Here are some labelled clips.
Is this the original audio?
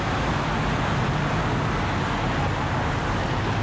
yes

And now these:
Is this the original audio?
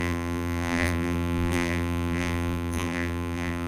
no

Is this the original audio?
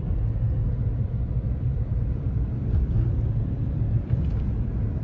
no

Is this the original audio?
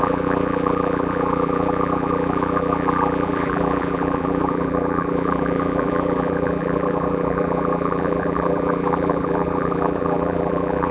no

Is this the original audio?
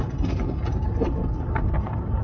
yes